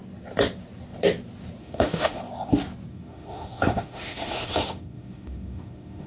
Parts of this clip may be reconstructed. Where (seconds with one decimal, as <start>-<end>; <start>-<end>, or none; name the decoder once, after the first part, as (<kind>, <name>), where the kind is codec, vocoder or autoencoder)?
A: 1.6-2.2 (autoencoder, DAC-VAE); 2.9-6.1